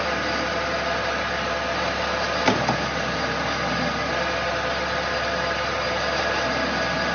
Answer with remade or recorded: recorded